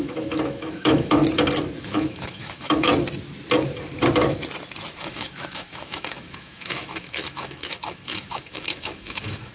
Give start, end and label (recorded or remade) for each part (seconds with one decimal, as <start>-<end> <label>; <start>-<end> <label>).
0.0-1.2 remade; 1.2-1.8 recorded; 1.8-2.9 remade; 2.9-5.0 recorded; 5.0-9.5 remade